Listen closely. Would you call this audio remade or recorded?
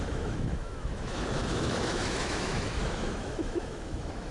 remade